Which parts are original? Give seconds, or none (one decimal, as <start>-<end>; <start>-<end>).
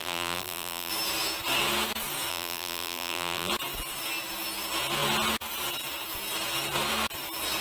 0.9-2.3; 3.5-7.6